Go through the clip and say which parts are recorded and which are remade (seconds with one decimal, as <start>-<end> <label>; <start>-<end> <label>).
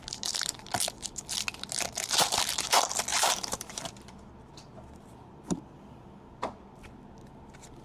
0.0-3.1 recorded; 3.1-4.3 remade; 4.3-7.8 recorded